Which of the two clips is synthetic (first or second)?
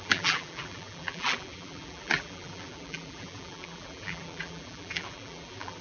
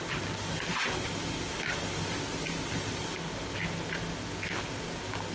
first